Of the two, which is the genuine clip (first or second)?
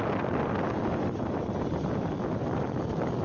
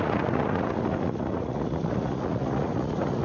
first